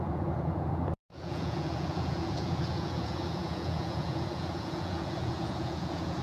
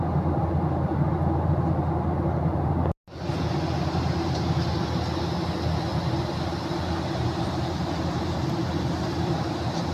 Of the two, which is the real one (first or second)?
second